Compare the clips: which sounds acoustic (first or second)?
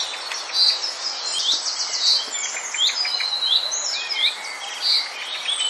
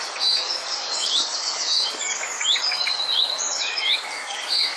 first